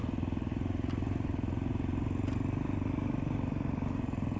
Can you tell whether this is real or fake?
real